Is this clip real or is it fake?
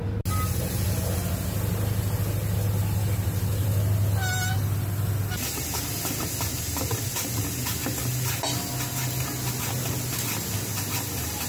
real